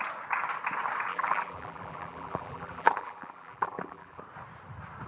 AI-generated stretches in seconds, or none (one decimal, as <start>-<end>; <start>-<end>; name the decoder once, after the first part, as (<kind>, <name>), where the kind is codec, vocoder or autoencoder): 1.1-4.2 (vocoder, BigVGAN v2)